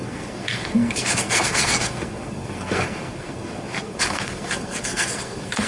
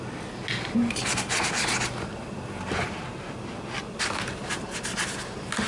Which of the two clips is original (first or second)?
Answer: second